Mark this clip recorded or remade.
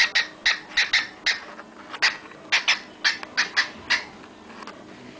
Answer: recorded